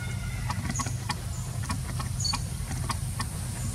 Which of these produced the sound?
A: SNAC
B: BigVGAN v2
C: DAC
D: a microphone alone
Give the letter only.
D